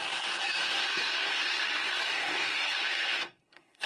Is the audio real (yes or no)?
no